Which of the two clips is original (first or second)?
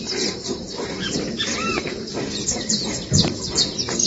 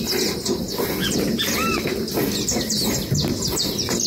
second